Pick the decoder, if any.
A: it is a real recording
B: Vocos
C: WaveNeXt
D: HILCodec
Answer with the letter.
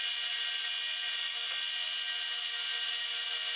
A